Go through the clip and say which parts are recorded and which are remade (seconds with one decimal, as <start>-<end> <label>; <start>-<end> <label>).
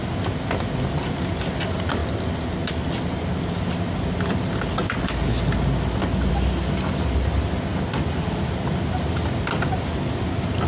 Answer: 0.0-10.7 recorded